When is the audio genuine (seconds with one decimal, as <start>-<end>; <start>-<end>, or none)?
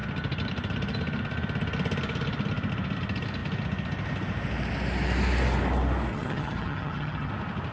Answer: 0.0-6.1; 7.3-7.7